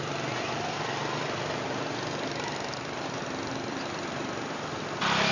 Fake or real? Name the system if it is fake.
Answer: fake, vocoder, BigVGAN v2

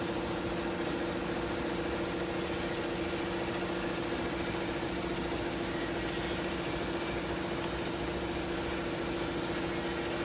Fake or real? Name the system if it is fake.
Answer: real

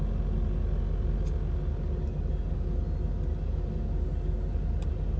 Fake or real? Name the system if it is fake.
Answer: real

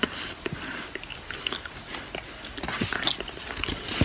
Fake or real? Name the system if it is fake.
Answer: real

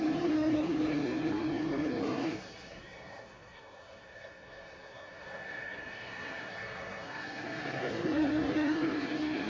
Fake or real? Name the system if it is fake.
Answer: fake, codec, SNAC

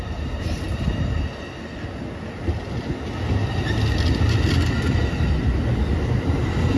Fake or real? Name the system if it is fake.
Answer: real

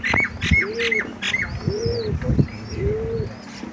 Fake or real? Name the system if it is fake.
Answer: real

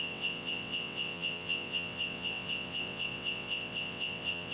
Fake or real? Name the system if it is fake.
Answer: fake, vocoder, WaveNeXt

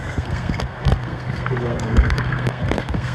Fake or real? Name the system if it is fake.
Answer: fake, codec, SNAC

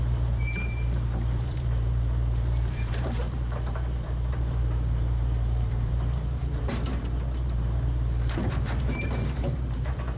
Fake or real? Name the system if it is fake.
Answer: fake, vocoder, BigVGAN v2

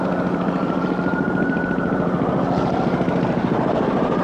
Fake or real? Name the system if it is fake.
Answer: fake, vocoder, BigVGAN v2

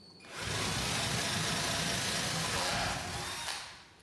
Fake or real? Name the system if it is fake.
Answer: real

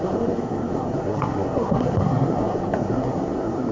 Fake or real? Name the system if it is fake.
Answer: fake, codec, SNAC